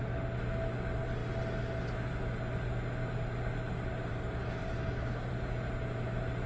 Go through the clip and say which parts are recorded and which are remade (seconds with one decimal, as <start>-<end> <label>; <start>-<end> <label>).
0.0-4.1 recorded; 4.1-5.3 remade; 5.3-6.5 recorded

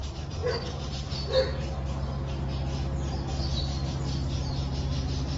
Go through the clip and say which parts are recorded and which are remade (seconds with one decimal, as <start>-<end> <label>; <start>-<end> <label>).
0.0-5.4 recorded

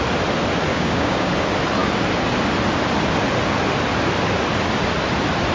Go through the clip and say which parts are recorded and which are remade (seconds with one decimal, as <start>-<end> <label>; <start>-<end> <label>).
0.0-0.7 recorded; 0.7-1.3 remade; 1.3-5.5 recorded

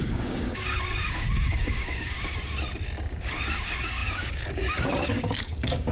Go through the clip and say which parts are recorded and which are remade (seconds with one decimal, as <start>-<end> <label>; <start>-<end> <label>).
0.0-2.3 remade; 2.3-3.2 recorded; 3.2-5.9 remade

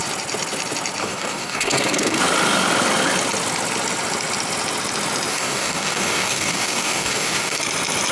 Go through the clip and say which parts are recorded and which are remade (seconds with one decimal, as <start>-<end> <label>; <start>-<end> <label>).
0.0-1.0 recorded; 1.0-2.2 remade; 2.2-5.3 recorded; 5.3-7.6 remade; 7.6-8.1 recorded